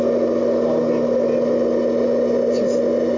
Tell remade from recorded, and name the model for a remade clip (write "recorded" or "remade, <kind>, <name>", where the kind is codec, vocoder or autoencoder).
recorded